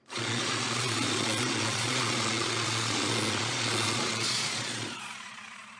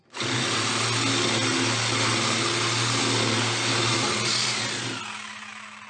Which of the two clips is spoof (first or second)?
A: first